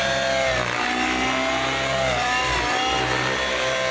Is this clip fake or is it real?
real